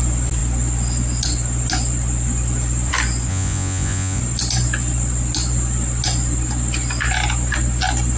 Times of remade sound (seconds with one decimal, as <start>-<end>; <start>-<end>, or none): 3.3-4.2